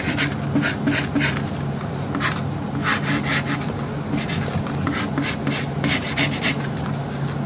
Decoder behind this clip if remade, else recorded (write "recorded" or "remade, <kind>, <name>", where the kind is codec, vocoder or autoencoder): recorded